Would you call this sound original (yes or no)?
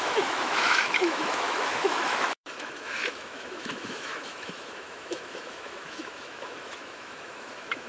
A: no